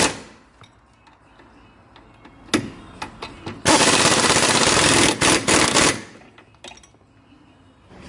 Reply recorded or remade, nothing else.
recorded